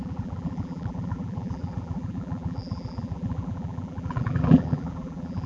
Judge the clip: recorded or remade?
remade